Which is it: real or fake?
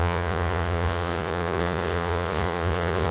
fake